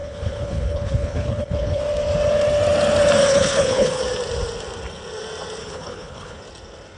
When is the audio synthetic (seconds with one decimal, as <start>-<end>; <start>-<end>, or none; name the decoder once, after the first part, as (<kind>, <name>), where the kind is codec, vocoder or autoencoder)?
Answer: 0.0-1.8 (codec, HILCodec); 3.3-4.0; 5.6-6.4